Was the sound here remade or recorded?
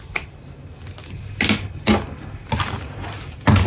recorded